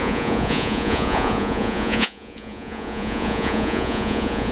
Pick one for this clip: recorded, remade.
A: remade